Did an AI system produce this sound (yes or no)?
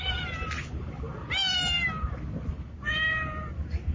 yes